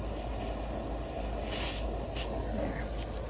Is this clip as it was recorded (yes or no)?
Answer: yes